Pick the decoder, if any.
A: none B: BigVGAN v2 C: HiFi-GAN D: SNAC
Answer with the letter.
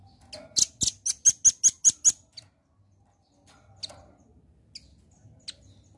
A